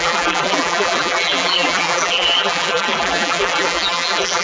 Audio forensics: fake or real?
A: fake